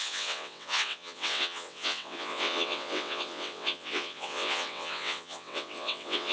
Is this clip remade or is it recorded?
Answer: remade